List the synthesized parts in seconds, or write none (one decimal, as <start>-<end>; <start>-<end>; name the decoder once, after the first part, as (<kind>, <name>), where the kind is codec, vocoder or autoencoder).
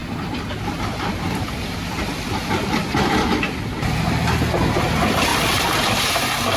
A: 0.0-4.0 (vocoder, BigVGAN v2); 5.3-6.0